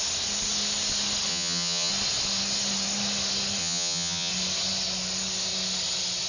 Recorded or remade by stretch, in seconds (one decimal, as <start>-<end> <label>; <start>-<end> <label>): 0.0-1.3 recorded; 1.3-1.9 remade; 1.9-3.6 recorded; 3.6-4.3 remade; 4.3-6.3 recorded